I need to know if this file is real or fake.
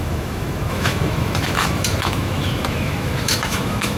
fake